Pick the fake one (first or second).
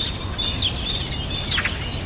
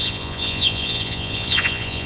second